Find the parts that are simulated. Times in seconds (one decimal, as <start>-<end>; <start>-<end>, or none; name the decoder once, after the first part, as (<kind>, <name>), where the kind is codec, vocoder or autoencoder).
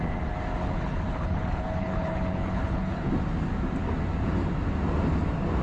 0.6-3.1 (codec, HILCodec)